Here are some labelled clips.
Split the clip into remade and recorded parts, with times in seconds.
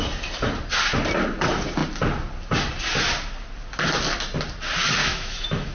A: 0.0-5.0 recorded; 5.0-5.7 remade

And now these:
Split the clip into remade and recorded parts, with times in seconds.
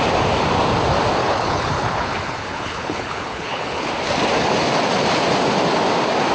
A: 0.0-1.2 recorded; 1.2-3.9 remade; 3.9-6.3 recorded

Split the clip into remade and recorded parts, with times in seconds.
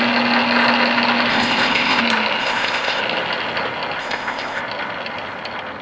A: 0.0-1.3 recorded; 1.3-2.0 remade; 2.0-2.4 recorded; 2.4-3.0 remade; 3.0-4.0 recorded; 4.0-4.6 remade; 4.6-5.8 recorded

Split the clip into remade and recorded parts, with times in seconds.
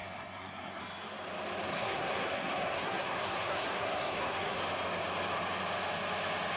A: 0.0-0.8 remade; 0.8-1.7 recorded; 1.7-4.6 remade; 4.6-6.6 recorded